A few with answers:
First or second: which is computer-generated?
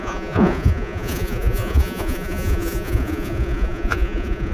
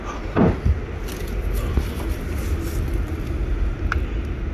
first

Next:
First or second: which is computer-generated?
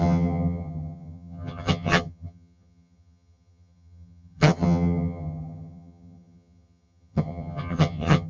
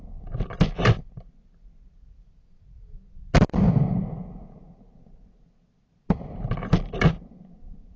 first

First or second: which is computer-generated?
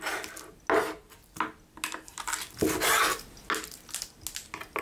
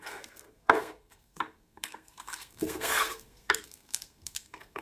second